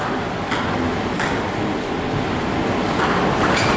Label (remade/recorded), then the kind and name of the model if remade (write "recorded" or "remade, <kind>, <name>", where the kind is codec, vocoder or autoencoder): recorded